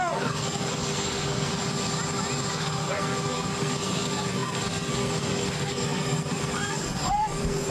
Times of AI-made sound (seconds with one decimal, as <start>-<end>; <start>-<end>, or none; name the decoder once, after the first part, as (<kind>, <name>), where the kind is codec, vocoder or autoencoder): 0.0-1.5 (codec, SNAC); 2.5-7.7